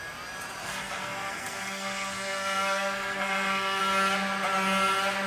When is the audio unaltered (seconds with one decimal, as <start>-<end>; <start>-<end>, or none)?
0.0-0.6; 3.8-5.3